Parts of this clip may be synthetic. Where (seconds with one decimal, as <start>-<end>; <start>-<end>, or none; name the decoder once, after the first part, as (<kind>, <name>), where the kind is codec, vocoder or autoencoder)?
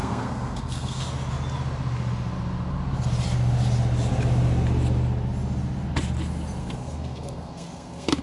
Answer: 0.0-1.0 (codec, SNAC); 6.6-8.2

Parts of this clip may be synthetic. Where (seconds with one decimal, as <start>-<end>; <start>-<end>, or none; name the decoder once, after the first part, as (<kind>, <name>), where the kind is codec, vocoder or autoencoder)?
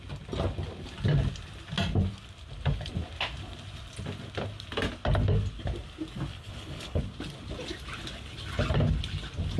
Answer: 6.3-7.0 (codec, HILCodec)